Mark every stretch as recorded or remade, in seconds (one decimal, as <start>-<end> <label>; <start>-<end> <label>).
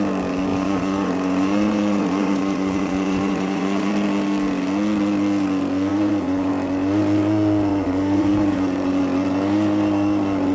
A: 0.0-0.5 recorded; 0.5-3.9 remade; 3.9-5.9 recorded; 5.9-6.5 remade; 6.5-7.7 recorded; 7.7-9.0 remade; 9.0-10.5 recorded